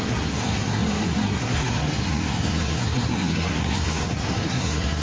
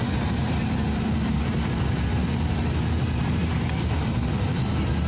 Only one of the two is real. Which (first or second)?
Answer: second